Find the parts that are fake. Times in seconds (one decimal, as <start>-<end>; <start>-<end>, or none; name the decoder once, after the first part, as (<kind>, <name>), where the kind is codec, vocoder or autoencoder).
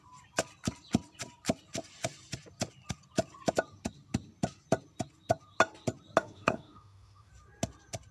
6.2-7.3 (autoencoder, DAC-VAE)